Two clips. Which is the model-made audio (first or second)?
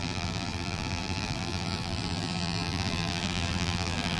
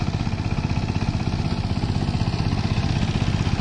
first